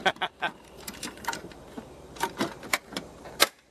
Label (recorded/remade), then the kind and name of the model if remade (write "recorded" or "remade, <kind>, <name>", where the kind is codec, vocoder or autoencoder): remade, vocoder, BigVGAN v2